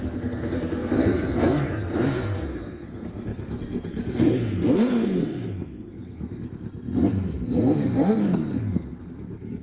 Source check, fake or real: fake